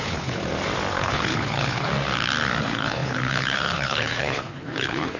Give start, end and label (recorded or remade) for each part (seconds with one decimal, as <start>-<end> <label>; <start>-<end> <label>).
0.0-0.4 remade; 0.4-0.9 recorded; 0.9-1.9 remade; 1.9-2.6 recorded; 2.6-5.2 remade